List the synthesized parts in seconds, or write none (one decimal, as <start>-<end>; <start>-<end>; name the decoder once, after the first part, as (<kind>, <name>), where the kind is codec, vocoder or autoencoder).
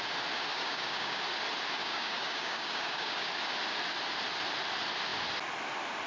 0.5-1.2 (codec, DAC); 1.8-3.3